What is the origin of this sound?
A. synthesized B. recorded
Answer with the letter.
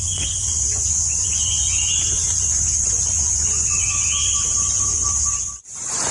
A